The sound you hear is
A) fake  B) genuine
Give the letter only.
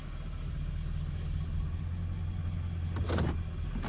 B